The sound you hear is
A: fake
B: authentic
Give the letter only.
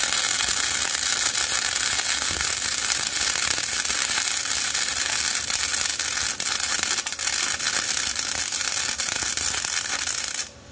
B